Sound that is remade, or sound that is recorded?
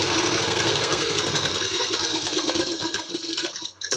remade